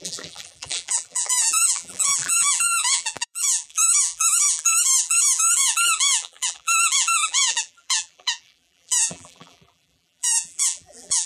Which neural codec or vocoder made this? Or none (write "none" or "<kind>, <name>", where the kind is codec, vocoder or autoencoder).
vocoder, BigVGAN v2